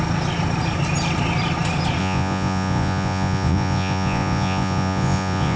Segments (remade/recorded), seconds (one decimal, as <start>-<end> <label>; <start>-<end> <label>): 0.0-2.0 recorded; 2.0-5.6 remade